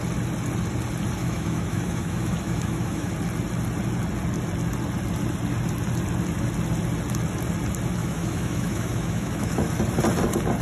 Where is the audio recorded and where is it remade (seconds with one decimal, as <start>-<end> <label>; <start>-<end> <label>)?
0.0-1.2 recorded; 1.2-3.1 remade; 3.1-8.0 recorded; 8.0-9.7 remade; 9.7-10.6 recorded